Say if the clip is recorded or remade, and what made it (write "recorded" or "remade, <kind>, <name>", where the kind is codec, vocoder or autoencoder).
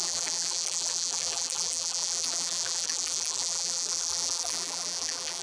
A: remade, vocoder, BigVGAN v2